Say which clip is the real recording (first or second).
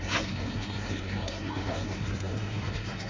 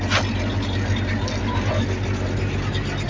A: second